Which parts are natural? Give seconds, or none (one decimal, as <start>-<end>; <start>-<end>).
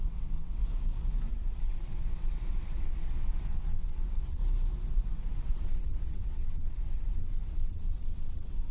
0.6-1.3; 4.4-4.9